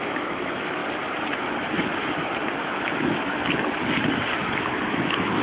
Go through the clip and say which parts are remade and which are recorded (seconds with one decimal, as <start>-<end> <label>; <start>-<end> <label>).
0.0-0.8 remade; 0.8-2.6 recorded; 2.6-3.4 remade; 3.4-4.9 recorded; 4.9-5.4 remade